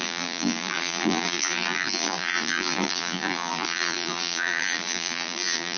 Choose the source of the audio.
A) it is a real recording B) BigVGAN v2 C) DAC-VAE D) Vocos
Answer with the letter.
B